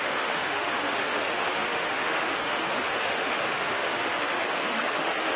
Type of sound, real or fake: fake